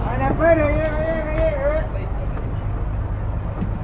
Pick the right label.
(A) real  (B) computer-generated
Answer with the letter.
A